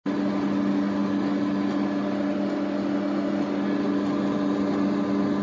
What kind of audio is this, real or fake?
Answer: real